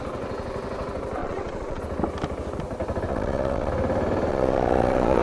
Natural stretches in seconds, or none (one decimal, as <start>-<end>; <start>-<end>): 0.0-1.2; 1.8-3.1; 3.7-4.3